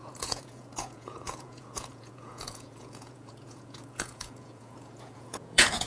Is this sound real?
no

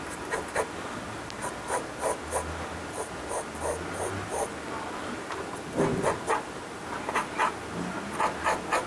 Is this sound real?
yes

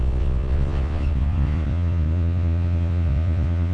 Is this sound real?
no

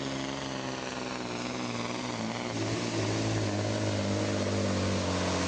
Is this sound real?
yes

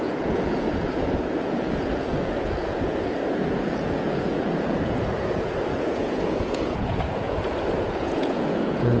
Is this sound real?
no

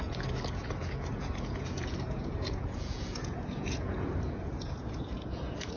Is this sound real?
no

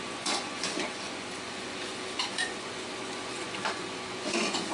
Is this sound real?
no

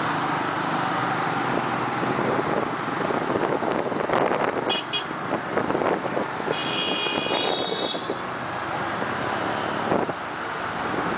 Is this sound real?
yes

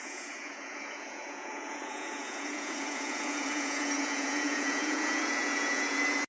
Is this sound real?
no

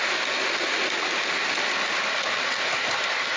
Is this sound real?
yes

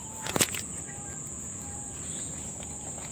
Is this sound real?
no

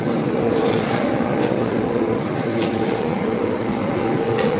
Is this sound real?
no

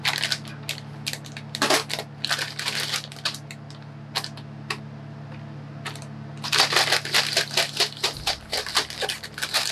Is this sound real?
yes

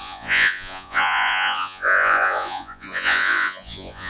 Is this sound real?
no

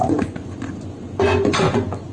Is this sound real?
no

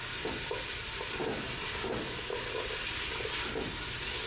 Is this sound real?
yes